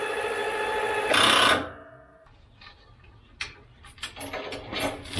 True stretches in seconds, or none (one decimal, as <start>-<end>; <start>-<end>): 0.0-5.2